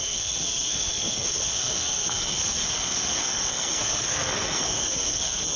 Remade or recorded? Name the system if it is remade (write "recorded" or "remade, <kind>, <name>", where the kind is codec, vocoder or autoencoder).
remade, codec, SNAC